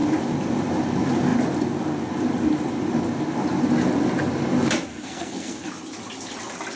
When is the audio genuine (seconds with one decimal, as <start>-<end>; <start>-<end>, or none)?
0.0-4.9; 5.7-6.8